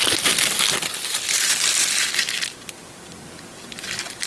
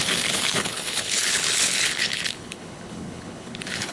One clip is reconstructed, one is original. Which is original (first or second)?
first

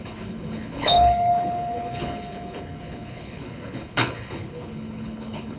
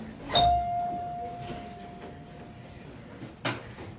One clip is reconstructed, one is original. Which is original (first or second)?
second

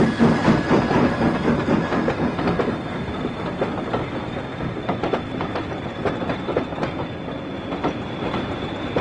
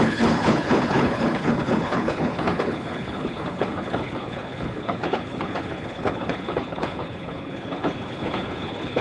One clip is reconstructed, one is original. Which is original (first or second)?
first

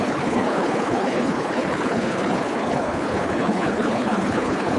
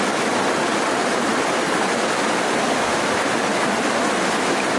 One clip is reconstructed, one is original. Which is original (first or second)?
second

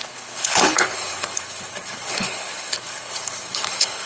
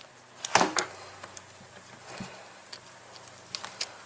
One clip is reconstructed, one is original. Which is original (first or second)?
second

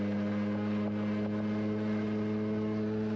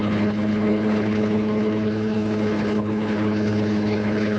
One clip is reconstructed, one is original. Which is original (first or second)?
first